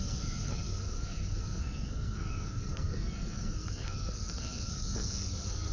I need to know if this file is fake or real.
fake